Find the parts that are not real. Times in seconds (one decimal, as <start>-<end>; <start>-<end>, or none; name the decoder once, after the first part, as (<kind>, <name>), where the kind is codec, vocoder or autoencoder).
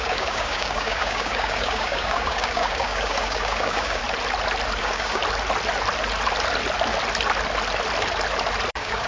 0.0-4.0 (codec, DAC); 4.8-5.2; 8.7-9.1